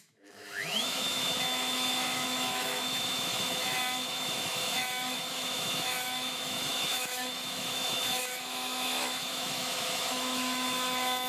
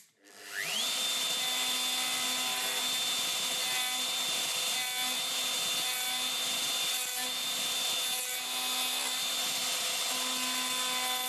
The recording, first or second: second